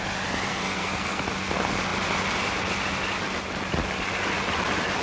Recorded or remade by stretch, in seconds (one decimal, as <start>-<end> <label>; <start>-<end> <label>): 0.0-0.5 recorded; 0.5-1.2 remade; 1.2-5.0 recorded